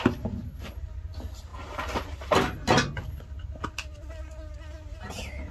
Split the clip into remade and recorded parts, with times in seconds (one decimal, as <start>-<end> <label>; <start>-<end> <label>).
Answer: 0.0-5.5 recorded